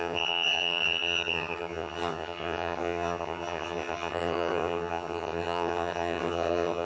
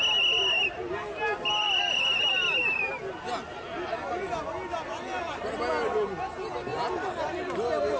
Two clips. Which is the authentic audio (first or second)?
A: second